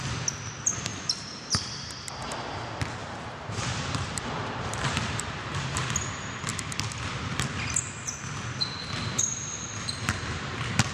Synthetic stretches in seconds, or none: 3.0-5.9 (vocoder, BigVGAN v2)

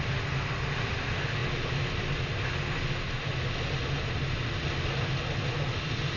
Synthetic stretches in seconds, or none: none

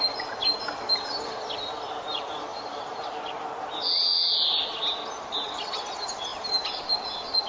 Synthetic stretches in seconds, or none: 2.5-3.2 (vocoder, BigVGAN v2); 6.3-6.8

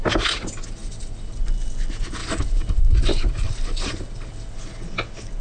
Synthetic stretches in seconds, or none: 0.8-1.3 (vocoder, BigVGAN v2); 2.2-4.5

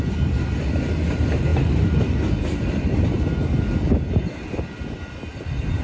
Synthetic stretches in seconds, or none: none

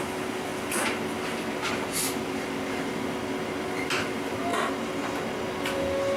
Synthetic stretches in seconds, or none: none